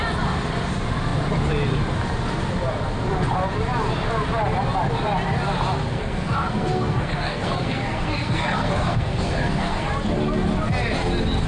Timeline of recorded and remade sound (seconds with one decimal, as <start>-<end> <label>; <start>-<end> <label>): 0.0-5.8 recorded; 5.8-9.9 remade; 9.9-11.5 recorded